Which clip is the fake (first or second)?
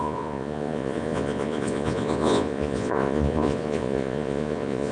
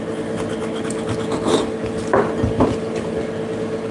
first